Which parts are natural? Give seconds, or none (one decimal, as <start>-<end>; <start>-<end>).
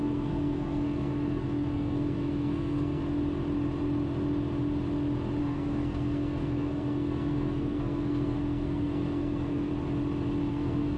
3.0-5.4; 9.7-10.5